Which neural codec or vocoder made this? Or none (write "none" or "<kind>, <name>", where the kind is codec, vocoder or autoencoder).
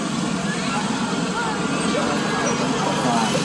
none